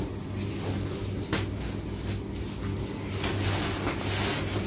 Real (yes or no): yes